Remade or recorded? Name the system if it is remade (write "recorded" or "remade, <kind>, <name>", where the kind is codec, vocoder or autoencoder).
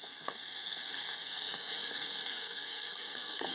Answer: remade, codec, SNAC